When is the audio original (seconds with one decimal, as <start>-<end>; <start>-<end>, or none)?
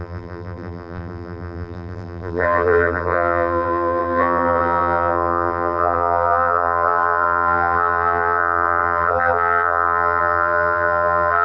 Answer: none